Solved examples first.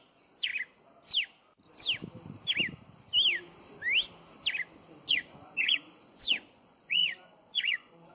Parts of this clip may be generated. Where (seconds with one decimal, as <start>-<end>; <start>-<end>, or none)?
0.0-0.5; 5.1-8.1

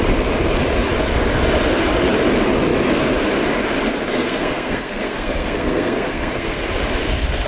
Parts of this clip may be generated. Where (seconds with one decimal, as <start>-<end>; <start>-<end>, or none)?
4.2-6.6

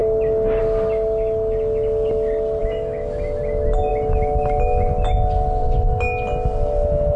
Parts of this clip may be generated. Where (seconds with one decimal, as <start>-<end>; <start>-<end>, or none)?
2.6-3.4

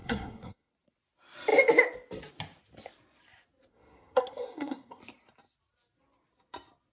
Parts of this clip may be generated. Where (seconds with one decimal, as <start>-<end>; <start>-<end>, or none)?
0.0-0.7; 3.7-5.0